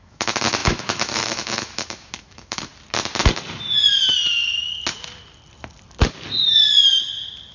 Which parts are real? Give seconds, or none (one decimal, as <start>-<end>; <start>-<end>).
2.7-7.5